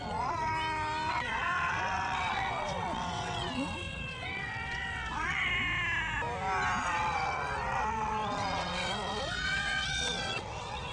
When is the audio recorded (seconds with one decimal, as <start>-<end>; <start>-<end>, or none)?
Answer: 0.5-1.1; 5.5-6.8